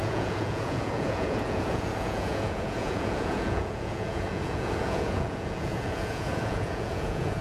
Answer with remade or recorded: remade